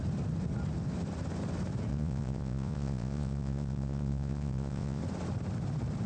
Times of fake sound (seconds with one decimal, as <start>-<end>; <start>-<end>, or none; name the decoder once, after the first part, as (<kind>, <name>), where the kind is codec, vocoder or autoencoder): 1.9-5.0 (vocoder, Vocos)